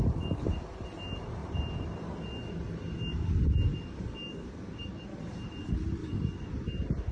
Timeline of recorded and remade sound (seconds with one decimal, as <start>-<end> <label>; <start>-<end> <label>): 0.0-3.7 recorded; 3.7-5.2 remade; 5.2-6.0 recorded; 6.0-6.5 remade; 6.5-7.1 recorded